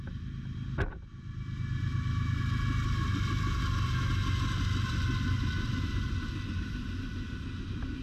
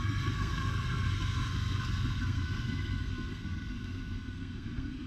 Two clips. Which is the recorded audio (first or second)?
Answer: first